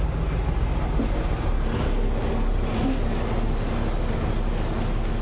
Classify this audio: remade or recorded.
recorded